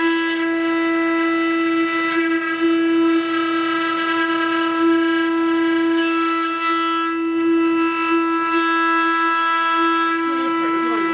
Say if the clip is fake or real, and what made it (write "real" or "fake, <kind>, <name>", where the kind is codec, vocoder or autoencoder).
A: real